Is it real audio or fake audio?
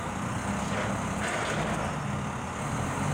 real